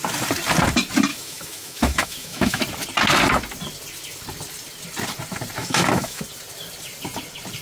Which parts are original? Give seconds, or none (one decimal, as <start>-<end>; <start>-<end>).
0.0-1.1; 2.6-5.6; 6.2-7.6